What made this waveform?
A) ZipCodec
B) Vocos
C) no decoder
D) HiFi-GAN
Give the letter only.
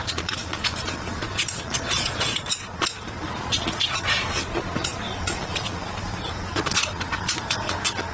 B